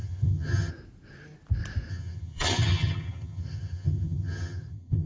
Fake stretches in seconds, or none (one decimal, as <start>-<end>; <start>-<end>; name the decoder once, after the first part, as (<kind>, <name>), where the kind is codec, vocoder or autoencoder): 0.0-0.7 (vocoder, HiFi-GAN); 1.9-5.1